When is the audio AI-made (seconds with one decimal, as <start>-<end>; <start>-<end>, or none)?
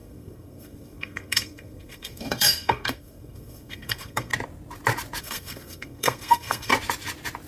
0.0-4.3; 5.2-6.7